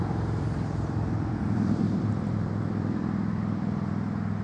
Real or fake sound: fake